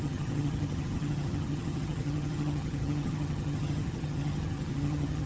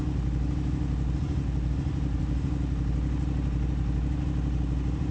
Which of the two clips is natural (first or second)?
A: second